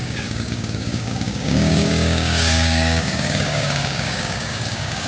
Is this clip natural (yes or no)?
no